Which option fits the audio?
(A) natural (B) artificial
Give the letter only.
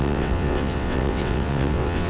B